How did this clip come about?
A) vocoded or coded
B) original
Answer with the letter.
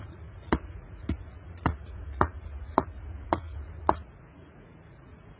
A